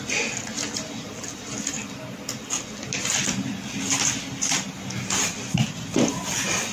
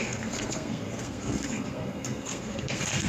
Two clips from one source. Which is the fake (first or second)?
second